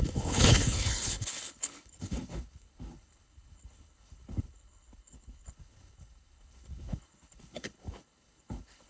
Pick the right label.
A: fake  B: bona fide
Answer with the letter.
A